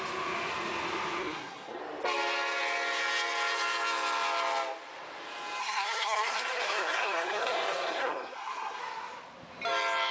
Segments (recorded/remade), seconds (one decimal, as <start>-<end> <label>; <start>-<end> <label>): 0.0-1.2 recorded; 1.2-1.8 remade; 1.8-5.6 recorded; 5.6-8.8 remade; 8.8-10.1 recorded